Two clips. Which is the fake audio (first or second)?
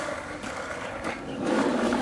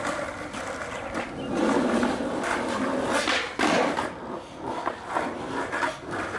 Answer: first